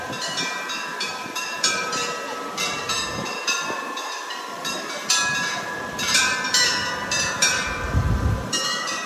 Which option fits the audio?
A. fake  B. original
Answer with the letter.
A